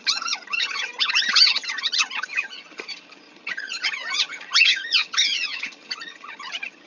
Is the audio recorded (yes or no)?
no